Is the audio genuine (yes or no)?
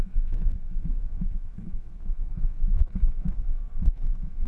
no